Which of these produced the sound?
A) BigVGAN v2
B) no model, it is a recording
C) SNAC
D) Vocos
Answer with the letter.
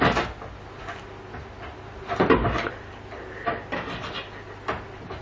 B